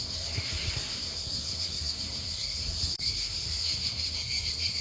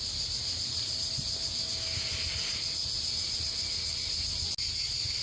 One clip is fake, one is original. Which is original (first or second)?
second